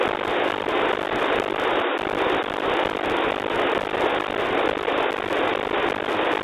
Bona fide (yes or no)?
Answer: yes